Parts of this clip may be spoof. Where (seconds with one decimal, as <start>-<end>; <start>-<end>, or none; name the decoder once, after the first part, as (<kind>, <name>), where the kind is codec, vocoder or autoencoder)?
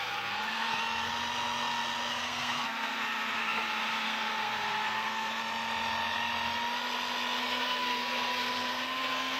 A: 0.0-0.8 (codec, SNAC); 2.1-5.4; 7.4-9.4